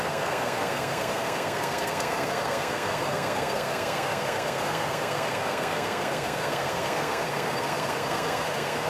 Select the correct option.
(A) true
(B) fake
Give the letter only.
B